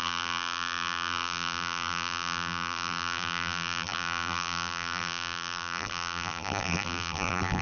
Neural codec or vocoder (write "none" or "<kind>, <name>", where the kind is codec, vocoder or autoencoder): vocoder, BigVGAN v2